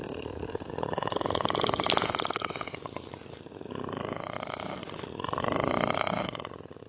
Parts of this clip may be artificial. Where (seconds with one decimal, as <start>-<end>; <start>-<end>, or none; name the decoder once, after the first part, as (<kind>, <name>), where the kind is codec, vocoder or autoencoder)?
none